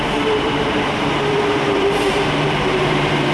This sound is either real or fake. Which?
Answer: fake